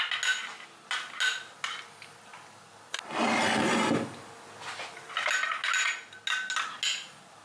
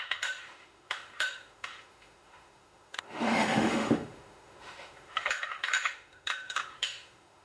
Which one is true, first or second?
first